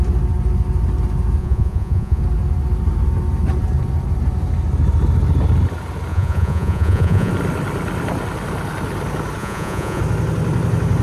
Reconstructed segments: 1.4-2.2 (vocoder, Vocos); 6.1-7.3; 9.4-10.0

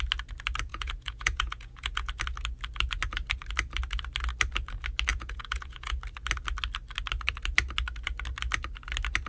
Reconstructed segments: 0.7-2.1 (vocoder, Vocos); 5.1-6.0

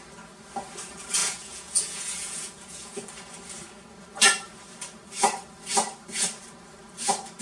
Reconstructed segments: 1.2-3.0 (vocoder, Vocos)

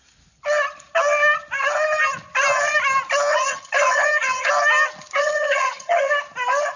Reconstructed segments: 3.3-4.5 (vocoder, HiFi-GAN); 5.2-6.1